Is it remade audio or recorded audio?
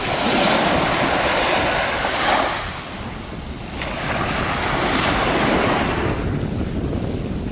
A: recorded